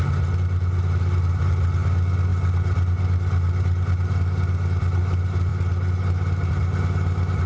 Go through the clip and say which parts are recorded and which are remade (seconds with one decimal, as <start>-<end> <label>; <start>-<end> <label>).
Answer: 0.0-7.5 recorded